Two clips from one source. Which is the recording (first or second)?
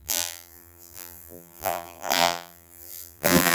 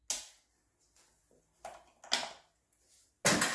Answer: second